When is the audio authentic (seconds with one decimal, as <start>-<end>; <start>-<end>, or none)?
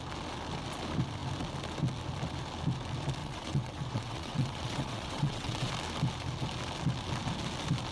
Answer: 0.0-3.2; 5.7-7.9